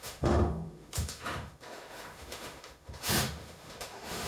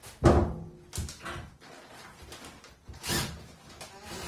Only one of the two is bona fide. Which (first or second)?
second